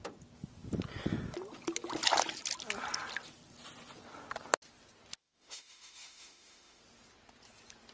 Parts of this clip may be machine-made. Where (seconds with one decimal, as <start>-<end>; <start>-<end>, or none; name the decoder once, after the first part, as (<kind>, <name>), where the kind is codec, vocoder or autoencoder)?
5.2-6.8 (autoencoder, DAC-VAE)